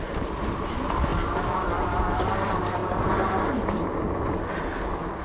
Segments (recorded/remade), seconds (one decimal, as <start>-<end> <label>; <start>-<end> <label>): 0.0-5.2 recorded